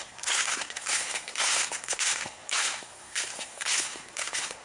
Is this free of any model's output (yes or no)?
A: no